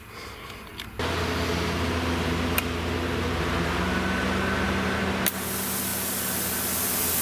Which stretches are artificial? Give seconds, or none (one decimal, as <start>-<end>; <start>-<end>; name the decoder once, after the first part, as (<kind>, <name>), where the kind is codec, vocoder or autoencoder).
none